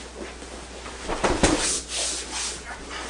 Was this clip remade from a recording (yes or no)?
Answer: no